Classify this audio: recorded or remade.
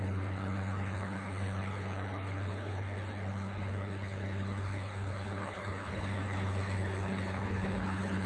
remade